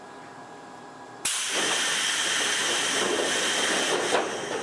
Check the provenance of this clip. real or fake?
real